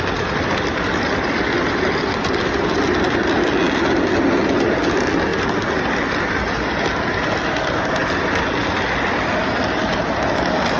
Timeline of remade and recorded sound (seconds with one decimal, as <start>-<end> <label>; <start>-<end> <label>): 0.0-10.8 recorded